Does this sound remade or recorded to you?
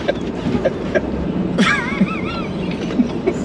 remade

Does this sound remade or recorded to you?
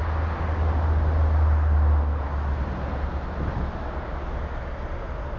recorded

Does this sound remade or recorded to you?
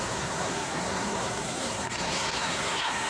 remade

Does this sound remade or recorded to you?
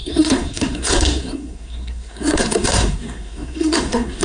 remade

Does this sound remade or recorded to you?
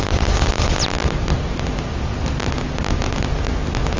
recorded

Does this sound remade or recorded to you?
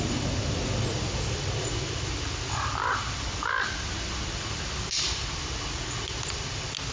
recorded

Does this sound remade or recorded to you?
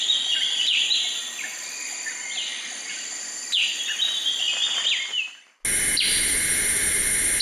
recorded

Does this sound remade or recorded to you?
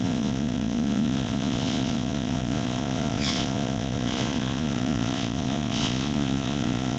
remade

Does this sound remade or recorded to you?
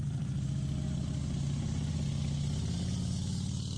recorded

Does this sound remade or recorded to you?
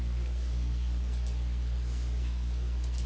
remade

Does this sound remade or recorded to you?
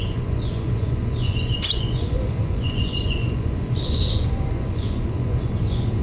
remade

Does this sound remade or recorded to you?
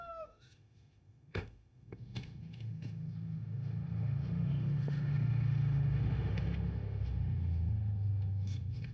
remade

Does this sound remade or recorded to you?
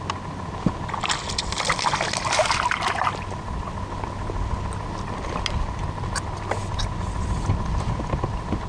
recorded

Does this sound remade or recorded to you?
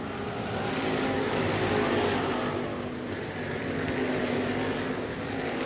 recorded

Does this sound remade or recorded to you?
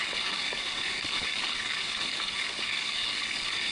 remade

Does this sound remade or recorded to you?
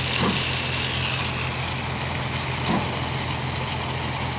recorded